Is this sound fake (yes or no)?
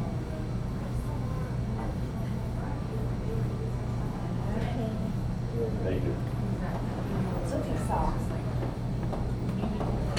no